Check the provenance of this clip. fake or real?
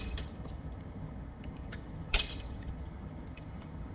fake